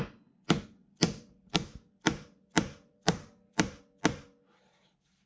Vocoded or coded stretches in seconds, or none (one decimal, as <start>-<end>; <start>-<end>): 0.8-3.8